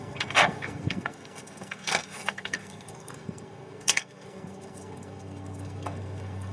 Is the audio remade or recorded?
remade